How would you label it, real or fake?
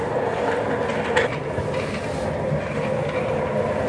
real